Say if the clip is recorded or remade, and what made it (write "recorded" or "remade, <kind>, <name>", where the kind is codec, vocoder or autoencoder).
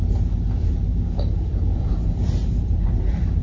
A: remade, vocoder, BigVGAN v2